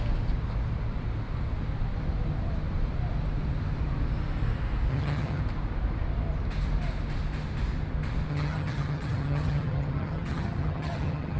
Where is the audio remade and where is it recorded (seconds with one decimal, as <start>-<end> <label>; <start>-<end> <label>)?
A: 0.0-4.9 recorded; 4.9-5.4 remade; 5.4-8.3 recorded; 8.3-11.4 remade